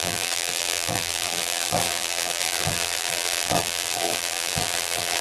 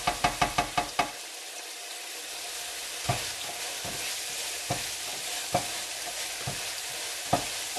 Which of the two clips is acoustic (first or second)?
second